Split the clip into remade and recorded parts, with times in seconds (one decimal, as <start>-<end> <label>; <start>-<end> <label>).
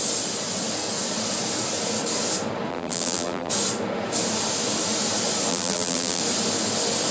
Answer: 0.0-2.7 recorded; 2.7-3.5 remade; 3.5-5.5 recorded; 5.5-6.2 remade; 6.2-7.1 recorded